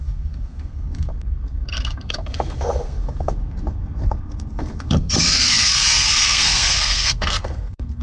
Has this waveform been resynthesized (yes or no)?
yes